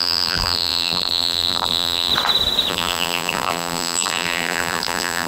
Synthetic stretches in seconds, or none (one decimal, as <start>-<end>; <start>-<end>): 0.0-2.1; 2.7-5.3